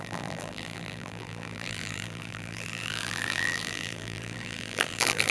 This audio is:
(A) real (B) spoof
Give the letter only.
B